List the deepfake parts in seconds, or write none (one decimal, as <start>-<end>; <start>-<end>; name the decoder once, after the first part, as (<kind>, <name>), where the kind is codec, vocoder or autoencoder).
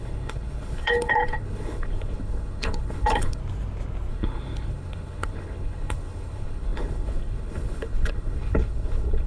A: 0.0-3.4 (codec, HILCodec); 4.1-9.3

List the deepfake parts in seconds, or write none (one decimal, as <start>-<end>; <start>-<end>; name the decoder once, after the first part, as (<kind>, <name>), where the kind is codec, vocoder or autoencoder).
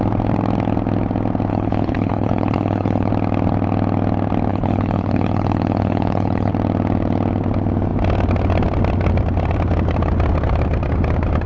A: 1.5-3.1 (codec, HILCodec); 4.5-6.5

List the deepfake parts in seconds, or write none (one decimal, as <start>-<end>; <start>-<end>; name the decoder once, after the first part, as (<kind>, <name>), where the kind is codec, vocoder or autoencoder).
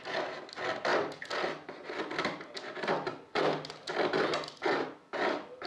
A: none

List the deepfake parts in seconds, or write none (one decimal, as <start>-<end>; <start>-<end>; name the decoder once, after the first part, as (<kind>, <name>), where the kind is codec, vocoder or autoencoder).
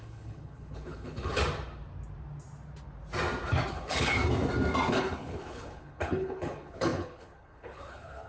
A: 0.0-1.4 (codec, HILCodec); 3.7-4.2; 4.9-8.3